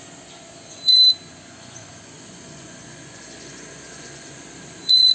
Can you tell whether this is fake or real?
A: fake